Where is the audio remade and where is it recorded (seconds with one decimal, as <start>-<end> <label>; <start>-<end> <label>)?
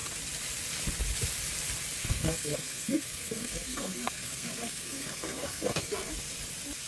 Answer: 0.0-2.0 recorded; 2.0-6.1 remade; 6.1-6.9 recorded